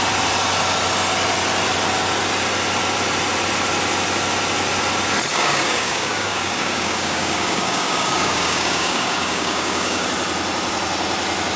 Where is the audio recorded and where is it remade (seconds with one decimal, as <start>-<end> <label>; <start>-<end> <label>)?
0.0-5.3 recorded; 5.3-10.1 remade; 10.1-11.6 recorded